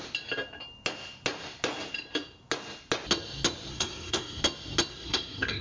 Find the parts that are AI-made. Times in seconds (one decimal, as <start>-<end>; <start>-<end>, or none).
3.7-4.4; 4.9-5.6